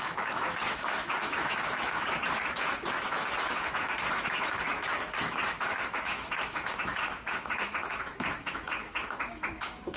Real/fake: fake